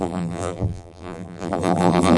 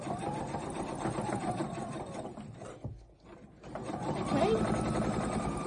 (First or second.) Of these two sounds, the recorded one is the second